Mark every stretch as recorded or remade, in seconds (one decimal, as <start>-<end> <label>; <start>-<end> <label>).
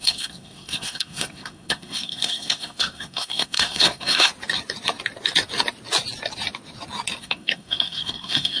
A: 0.0-4.3 remade; 4.3-7.2 recorded; 7.2-8.6 remade